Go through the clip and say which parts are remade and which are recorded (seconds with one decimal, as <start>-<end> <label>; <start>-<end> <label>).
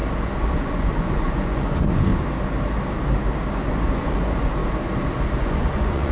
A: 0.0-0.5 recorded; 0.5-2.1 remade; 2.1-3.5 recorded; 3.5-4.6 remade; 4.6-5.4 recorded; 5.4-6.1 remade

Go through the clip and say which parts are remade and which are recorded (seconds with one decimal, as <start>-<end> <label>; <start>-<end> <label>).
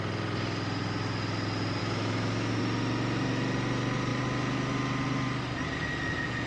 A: 0.0-1.8 recorded; 1.8-2.6 remade; 2.6-6.5 recorded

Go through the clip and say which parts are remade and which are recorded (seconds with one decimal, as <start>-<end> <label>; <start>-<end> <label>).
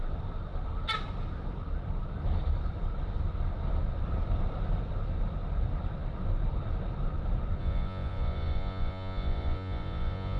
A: 0.0-7.6 recorded; 7.6-10.4 remade